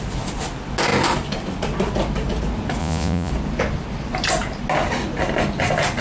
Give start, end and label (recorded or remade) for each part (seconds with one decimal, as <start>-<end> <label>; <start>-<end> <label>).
0.0-2.8 recorded; 2.8-3.3 remade; 3.3-6.0 recorded